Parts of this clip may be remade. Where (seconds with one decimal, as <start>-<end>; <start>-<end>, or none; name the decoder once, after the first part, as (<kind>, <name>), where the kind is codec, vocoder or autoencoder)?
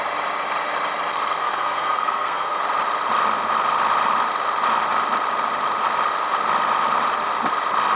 1.4-2.6 (codec, SNAC)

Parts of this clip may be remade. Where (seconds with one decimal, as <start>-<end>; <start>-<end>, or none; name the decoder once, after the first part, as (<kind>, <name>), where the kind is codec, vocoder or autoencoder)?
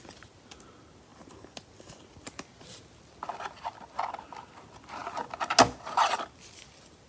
none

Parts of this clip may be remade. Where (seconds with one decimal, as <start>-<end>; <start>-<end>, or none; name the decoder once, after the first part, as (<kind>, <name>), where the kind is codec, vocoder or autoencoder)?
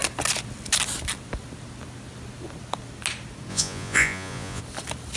3.5-4.6 (vocoder, Vocos)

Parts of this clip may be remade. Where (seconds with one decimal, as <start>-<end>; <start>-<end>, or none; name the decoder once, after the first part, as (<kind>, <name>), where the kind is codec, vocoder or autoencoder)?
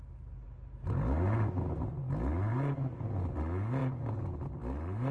none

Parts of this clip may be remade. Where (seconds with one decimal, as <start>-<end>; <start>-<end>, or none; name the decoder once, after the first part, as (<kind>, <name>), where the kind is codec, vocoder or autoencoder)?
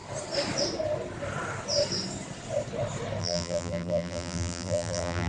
3.2-5.3 (vocoder, BigVGAN v2)